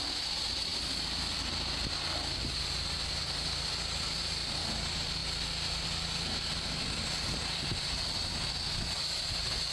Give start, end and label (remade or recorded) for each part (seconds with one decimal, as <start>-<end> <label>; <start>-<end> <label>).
0.0-9.7 recorded